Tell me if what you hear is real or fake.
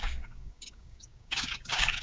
fake